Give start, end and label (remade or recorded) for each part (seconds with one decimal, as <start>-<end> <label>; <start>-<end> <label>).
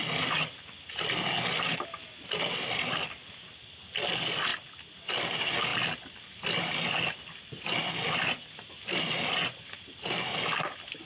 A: 0.0-11.1 recorded